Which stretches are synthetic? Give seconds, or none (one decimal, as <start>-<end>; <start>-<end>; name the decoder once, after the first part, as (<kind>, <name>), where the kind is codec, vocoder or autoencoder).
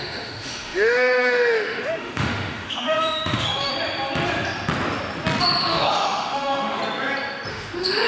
0.0-3.7 (autoencoder, DAC-VAE); 5.4-6.8; 7.5-8.1